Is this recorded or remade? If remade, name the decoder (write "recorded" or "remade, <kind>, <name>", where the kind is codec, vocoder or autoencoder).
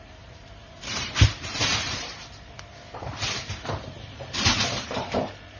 remade, vocoder, BigVGAN v2